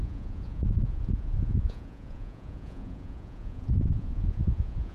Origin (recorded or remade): remade